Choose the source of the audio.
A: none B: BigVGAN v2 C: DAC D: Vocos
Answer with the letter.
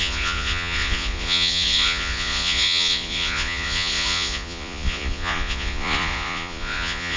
D